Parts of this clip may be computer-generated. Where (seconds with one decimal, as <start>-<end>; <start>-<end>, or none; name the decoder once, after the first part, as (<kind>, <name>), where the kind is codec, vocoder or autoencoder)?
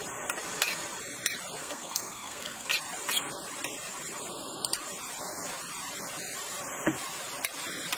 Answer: 1.6-2.7 (codec, SNAC)